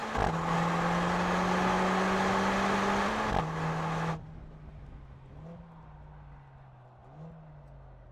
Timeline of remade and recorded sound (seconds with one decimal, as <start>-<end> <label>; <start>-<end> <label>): 0.0-8.1 recorded

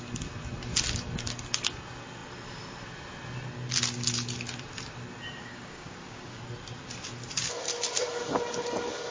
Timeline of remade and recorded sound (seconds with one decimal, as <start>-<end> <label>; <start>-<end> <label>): 0.0-5.4 recorded; 5.4-6.4 remade; 6.4-9.1 recorded

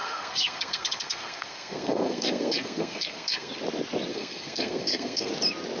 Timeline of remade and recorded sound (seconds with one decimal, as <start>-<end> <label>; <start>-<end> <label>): 0.0-3.5 remade; 3.5-4.1 recorded; 4.1-5.3 remade; 5.3-5.8 recorded

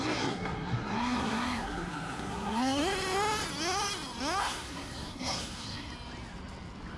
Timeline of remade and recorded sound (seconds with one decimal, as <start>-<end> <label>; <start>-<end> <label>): 0.0-2.8 remade; 2.8-4.4 recorded; 4.4-5.9 remade; 5.9-7.0 recorded

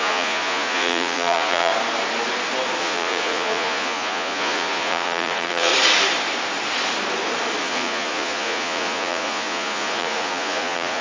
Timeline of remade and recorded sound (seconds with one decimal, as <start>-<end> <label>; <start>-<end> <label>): 0.0-1.7 remade; 1.7-2.8 recorded; 2.8-5.7 remade; 5.7-7.6 recorded; 7.6-11.0 remade

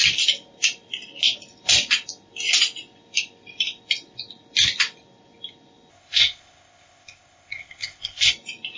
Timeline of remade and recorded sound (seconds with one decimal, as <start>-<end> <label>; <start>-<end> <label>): 0.0-5.9 recorded; 5.9-8.3 remade; 8.3-8.8 recorded

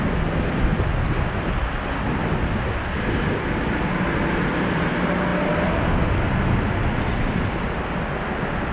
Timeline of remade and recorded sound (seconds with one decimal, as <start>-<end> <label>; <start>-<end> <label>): 0.0-8.7 recorded

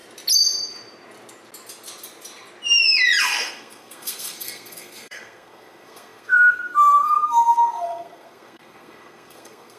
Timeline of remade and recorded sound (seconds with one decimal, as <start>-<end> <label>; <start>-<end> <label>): 0.0-3.2 recorded; 3.2-9.8 remade